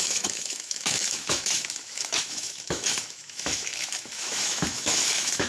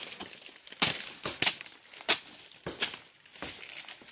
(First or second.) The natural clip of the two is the second